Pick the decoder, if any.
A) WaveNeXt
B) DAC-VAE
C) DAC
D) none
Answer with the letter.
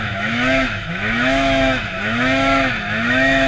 B